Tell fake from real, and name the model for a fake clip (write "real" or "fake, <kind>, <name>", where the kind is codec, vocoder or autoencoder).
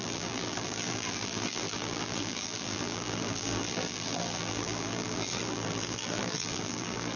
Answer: fake, vocoder, BigVGAN v2